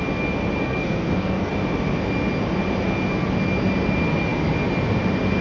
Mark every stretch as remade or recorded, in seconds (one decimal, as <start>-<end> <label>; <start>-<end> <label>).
0.0-0.6 recorded; 0.6-1.5 remade; 1.5-5.4 recorded